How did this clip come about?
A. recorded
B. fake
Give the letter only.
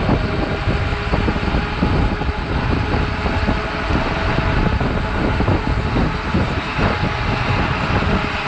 A